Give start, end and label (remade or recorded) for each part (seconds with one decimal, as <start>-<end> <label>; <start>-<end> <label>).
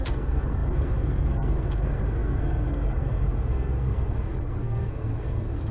0.0-5.7 remade